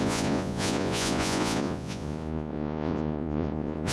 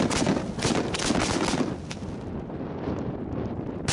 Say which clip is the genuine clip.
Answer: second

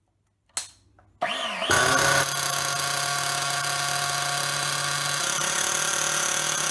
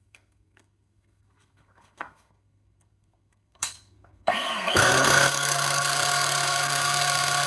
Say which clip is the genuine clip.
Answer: first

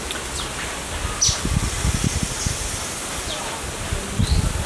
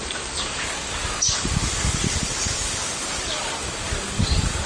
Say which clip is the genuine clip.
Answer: first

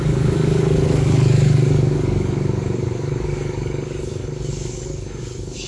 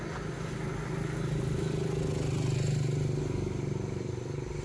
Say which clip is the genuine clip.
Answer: second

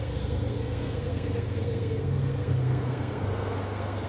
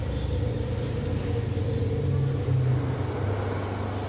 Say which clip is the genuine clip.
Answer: second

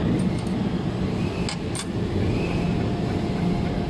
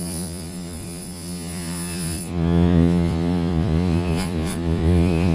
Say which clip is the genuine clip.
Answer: first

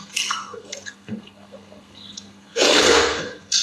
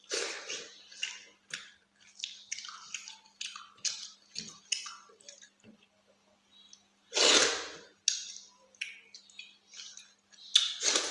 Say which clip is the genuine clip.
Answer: second